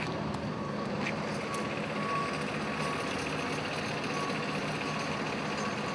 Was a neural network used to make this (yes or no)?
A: no